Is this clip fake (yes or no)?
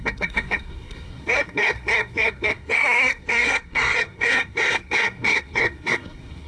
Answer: yes